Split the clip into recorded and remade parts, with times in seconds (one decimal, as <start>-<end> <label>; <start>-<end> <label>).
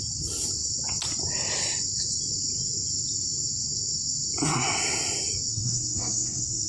0.0-5.5 recorded; 5.5-6.7 remade